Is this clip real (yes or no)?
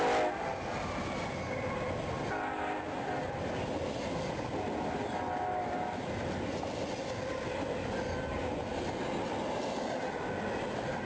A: yes